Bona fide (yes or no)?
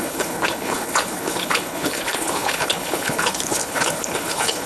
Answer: no